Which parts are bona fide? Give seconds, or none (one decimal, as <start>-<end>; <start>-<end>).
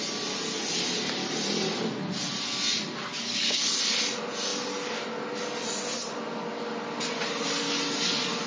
0.0-3.1; 3.6-8.5